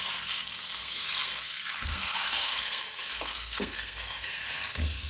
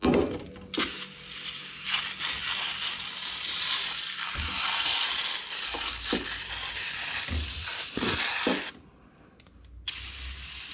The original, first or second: second